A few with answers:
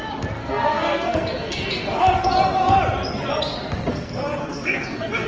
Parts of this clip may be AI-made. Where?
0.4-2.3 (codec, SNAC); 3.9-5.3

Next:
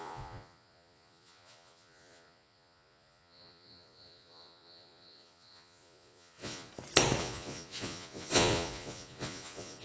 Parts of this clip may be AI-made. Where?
0.0-6.7 (vocoder, Vocos); 7.2-9.8

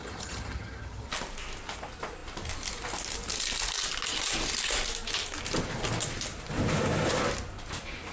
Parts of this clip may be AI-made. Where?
0.0-1.1 (vocoder, HiFi-GAN)

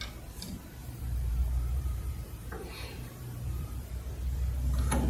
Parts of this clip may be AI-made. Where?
0.8-3.9 (vocoder, BigVGAN v2)